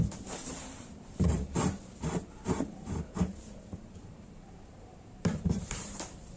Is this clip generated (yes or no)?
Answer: yes